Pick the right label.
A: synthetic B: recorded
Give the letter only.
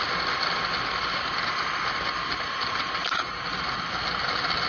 B